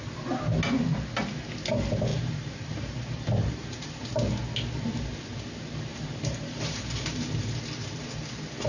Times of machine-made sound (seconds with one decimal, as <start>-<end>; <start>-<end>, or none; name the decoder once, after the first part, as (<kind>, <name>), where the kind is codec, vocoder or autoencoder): 2.1-3.9 (vocoder, BigVGAN v2); 5.9-7.5